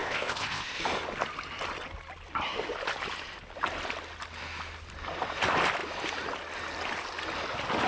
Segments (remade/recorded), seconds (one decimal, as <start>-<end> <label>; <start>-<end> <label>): 0.0-0.8 remade; 0.8-7.9 recorded